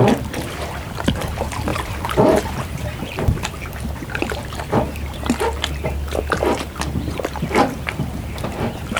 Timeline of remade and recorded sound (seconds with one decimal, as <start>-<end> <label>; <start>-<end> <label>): 0.0-1.7 recorded; 1.7-3.0 remade; 3.0-9.0 recorded